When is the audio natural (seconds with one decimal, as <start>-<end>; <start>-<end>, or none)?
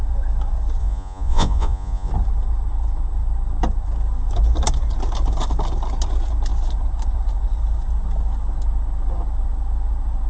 0.0-0.8; 2.1-10.3